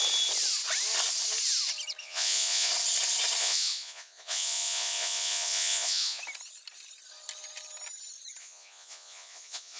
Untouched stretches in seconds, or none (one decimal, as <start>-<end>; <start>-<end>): 0.0-2.0; 2.7-3.4; 6.2-8.4